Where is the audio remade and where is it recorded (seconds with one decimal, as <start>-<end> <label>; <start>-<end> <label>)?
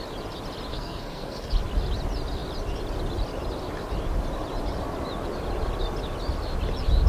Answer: 0.0-0.7 recorded; 0.7-1.5 remade; 1.5-7.1 recorded